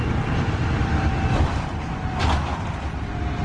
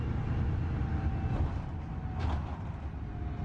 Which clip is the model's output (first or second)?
first